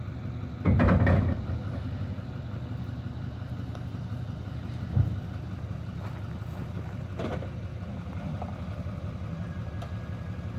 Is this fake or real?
real